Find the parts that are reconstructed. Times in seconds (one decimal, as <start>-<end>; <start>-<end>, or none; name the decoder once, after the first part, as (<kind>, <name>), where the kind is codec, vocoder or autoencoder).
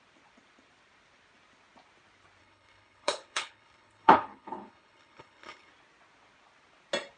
2.4-5.7 (codec, HILCodec)